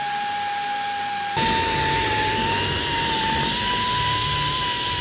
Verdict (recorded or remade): recorded